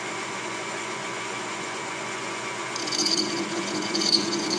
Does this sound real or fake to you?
fake